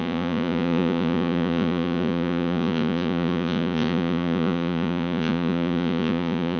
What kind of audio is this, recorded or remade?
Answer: remade